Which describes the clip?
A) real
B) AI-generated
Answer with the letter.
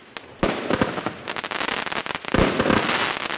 A